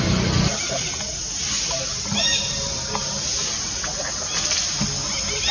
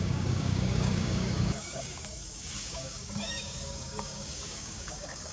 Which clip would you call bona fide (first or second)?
first